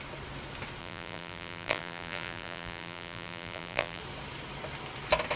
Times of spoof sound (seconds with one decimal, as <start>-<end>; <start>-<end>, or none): 0.8-4.0